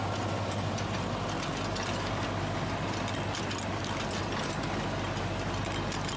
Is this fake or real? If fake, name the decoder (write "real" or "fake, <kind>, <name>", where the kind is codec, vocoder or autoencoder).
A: real